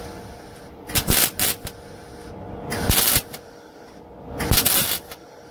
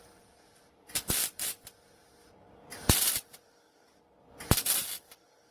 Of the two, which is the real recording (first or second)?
first